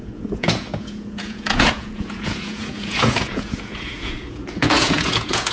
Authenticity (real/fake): fake